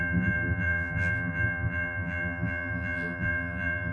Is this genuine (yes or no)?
no